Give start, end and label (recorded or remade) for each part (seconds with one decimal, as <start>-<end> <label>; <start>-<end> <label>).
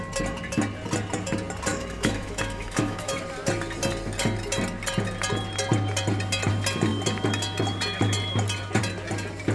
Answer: 0.0-1.7 recorded; 1.7-3.2 remade; 3.2-9.5 recorded